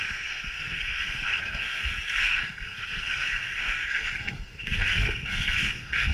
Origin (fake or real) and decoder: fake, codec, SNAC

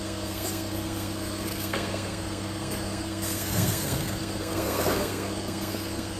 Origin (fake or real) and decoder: fake, codec, SNAC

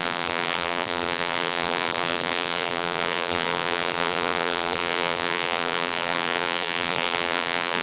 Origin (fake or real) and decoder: fake, vocoder, BigVGAN v2